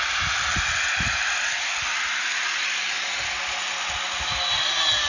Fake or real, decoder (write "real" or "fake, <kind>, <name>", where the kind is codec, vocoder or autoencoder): real